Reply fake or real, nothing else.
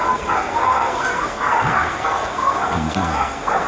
fake